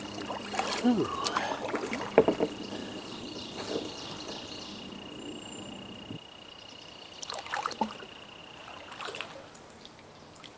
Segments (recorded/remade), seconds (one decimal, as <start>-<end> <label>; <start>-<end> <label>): 0.0-2.8 recorded; 2.8-4.9 remade; 4.9-8.4 recorded; 8.4-8.9 remade; 8.9-10.6 recorded